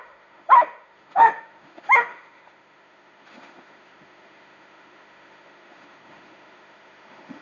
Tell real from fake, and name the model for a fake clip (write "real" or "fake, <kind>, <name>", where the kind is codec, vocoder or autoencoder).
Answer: fake, autoencoder, DAC-VAE